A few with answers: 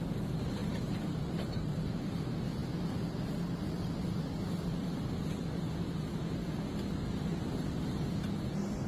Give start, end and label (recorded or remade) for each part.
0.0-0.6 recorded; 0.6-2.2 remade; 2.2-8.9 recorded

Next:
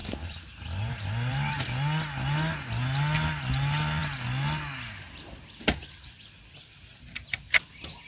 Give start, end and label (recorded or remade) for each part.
0.0-1.6 remade; 1.6-8.1 recorded